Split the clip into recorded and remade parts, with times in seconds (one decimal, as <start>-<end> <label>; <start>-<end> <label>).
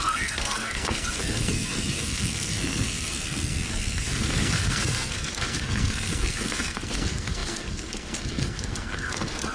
0.0-9.5 remade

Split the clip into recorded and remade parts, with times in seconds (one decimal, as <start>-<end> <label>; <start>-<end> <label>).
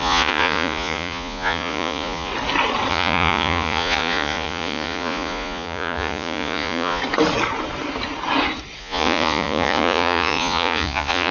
0.0-2.3 remade; 2.3-2.9 recorded; 2.9-7.0 remade; 7.0-8.8 recorded; 8.8-11.3 remade